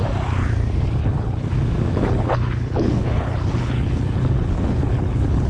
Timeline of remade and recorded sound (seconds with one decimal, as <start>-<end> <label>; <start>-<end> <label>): 0.0-1.0 recorded; 1.0-1.5 remade; 1.5-1.9 recorded; 1.9-5.5 remade